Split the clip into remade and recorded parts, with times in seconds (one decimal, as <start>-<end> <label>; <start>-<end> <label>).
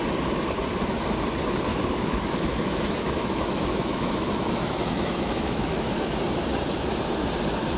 0.0-1.7 recorded; 1.7-6.2 remade; 6.2-7.8 recorded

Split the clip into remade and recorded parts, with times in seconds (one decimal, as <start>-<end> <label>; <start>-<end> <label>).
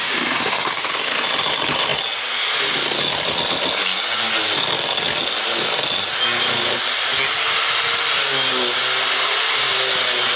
0.0-0.7 remade; 0.7-10.4 recorded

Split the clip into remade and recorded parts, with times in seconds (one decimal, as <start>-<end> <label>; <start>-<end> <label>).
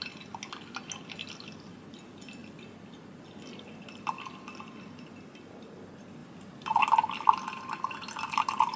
0.0-8.8 recorded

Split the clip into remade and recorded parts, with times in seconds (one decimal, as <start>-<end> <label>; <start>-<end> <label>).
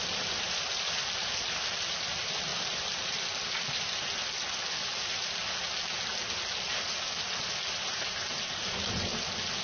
0.0-9.6 recorded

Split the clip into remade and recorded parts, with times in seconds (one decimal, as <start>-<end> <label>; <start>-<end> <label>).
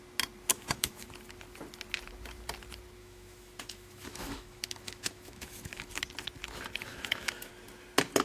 0.0-0.5 recorded; 0.5-1.1 remade; 1.1-3.0 recorded; 3.0-6.0 remade; 6.0-6.9 recorded; 6.9-7.5 remade; 7.5-8.2 recorded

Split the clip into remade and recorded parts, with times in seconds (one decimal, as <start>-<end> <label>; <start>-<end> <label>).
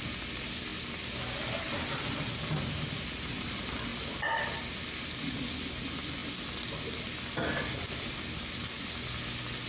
0.0-9.7 recorded